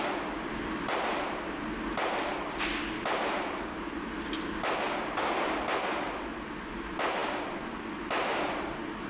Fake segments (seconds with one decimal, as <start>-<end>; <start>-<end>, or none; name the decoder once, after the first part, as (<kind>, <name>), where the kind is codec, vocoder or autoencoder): none